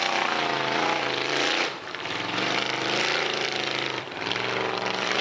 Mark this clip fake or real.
fake